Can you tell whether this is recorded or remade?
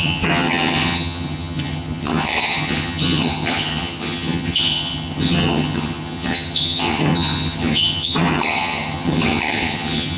remade